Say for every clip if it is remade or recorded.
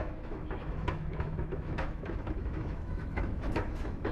remade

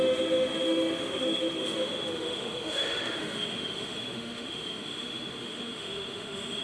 remade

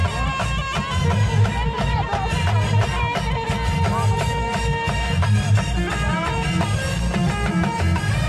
recorded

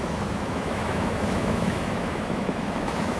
remade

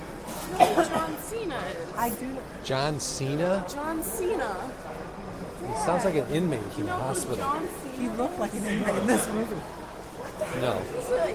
recorded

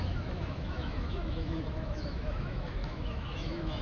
remade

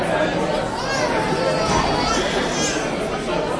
recorded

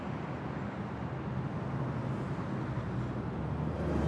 recorded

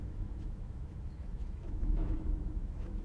remade